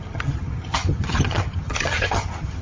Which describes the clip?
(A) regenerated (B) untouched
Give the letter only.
A